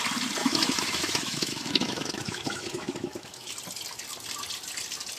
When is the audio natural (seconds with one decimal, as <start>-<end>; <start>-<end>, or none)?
0.0-0.4; 3.5-5.2